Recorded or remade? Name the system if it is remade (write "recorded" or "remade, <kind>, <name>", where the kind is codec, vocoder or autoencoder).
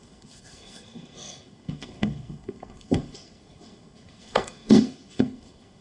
remade, codec, SNAC